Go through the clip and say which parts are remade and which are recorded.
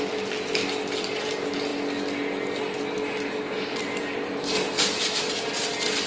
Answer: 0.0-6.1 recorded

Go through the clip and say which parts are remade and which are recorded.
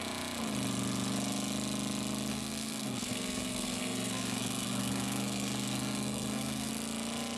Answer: 0.0-2.3 recorded; 2.3-6.7 remade; 6.7-7.4 recorded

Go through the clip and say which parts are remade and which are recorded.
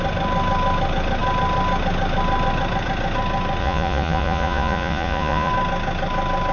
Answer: 0.0-3.6 recorded; 3.6-5.5 remade; 5.5-6.5 recorded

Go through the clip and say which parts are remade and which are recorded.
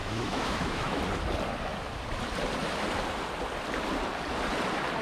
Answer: 0.0-1.0 remade; 1.0-5.0 recorded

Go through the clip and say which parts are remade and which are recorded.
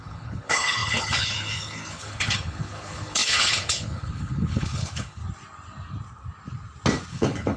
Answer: 0.0-5.2 remade; 5.2-7.1 recorded; 7.1-7.6 remade